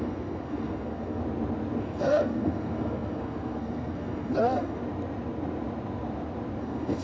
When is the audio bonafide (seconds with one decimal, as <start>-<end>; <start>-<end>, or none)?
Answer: 1.2-1.8; 4.8-6.6